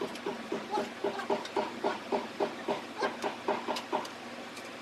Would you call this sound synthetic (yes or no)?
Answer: no